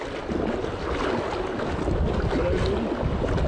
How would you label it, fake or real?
real